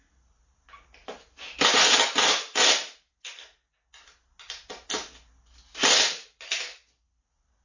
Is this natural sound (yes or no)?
yes